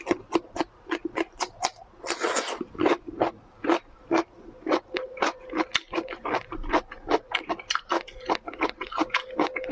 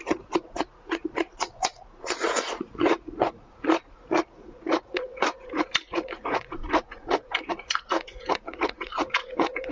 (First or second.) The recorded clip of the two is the first